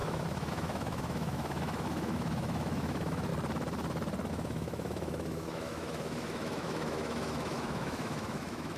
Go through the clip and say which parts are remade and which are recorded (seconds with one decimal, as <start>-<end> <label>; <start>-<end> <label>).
0.0-3.3 remade; 3.3-4.3 recorded; 4.3-8.8 remade